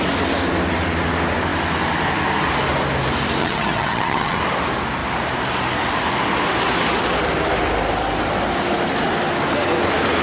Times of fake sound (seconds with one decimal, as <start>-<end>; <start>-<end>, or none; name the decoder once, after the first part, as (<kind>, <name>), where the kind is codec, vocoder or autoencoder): 3.4-4.4 (vocoder, HiFi-GAN)